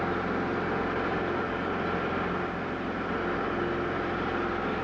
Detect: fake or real real